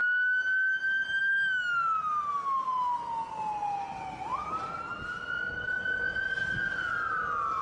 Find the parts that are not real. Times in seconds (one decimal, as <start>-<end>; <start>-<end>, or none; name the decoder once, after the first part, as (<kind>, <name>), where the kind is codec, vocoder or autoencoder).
none